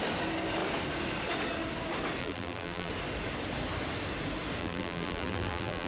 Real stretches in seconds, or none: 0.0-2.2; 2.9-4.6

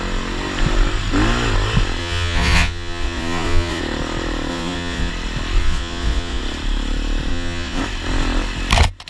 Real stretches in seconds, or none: 0.0-2.0; 3.8-4.5; 5.1-5.6; 6.4-7.3; 7.8-9.1

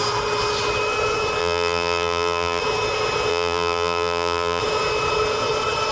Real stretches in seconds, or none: 0.0-1.4; 2.6-3.3; 4.6-5.9